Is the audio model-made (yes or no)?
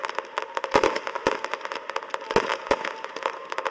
no